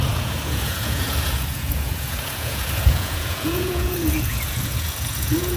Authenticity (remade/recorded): remade